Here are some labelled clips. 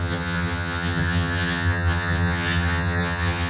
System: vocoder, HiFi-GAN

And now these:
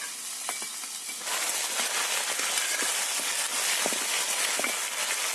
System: none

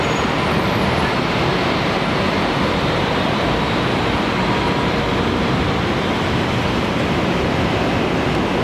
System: none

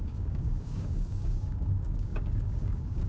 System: codec, DAC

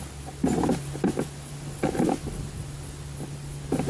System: none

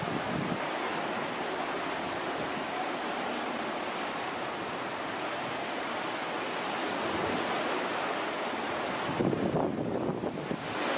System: none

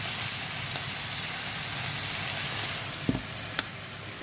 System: none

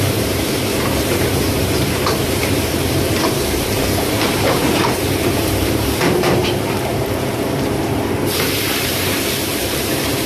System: vocoder, BigVGAN v2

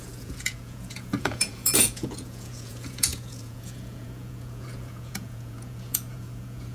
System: vocoder, Vocos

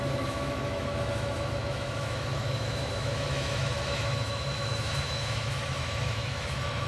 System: autoencoder, DAC-VAE